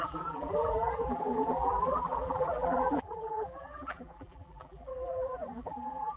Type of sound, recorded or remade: remade